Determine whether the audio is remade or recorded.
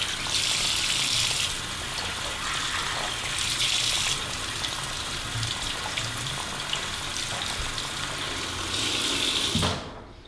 recorded